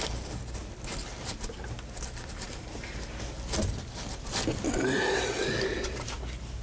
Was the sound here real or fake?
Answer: real